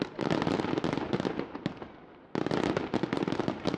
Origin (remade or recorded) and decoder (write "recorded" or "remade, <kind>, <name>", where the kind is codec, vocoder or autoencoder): recorded